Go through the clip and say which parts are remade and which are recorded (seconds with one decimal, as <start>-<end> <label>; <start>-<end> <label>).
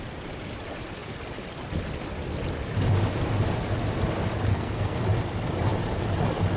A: 0.0-4.5 recorded; 4.5-5.0 remade; 5.0-6.6 recorded